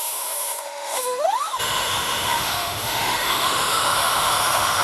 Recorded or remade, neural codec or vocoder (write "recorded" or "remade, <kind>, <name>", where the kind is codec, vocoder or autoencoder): remade, autoencoder, DAC-VAE